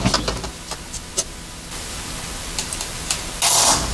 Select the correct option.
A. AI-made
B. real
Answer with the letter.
B